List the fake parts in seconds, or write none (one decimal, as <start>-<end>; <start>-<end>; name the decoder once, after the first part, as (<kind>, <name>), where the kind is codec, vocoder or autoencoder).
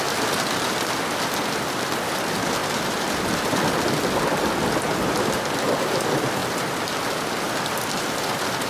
2.6-3.8 (vocoder, BigVGAN v2)